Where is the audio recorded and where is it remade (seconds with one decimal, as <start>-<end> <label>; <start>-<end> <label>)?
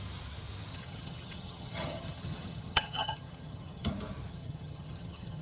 0.0-0.7 recorded; 0.7-3.9 remade; 3.9-4.3 recorded; 4.3-5.4 remade